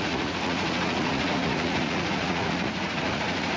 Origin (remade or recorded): remade